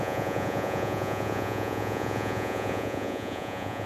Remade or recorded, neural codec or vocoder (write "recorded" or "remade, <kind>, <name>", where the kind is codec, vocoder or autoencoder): remade, vocoder, Vocos